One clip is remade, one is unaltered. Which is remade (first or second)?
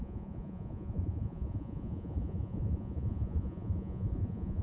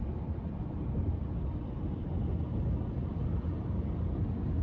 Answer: first